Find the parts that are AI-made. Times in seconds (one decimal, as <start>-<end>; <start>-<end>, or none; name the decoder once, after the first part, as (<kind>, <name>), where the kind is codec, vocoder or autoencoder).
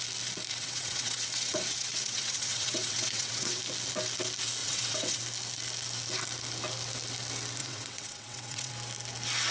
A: 0.5-3.6 (vocoder, WaveNeXt); 4.6-5.2; 7.6-8.7